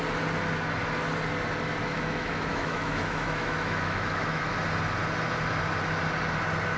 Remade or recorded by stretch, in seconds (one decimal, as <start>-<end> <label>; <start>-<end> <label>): 0.0-1.8 recorded; 1.8-4.4 remade; 4.4-6.8 recorded